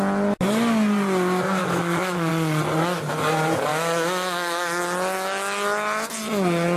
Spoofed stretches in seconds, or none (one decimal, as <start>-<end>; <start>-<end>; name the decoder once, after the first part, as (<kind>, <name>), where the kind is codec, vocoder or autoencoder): 1.6-2.3 (autoencoder, DAC-VAE); 3.7-4.8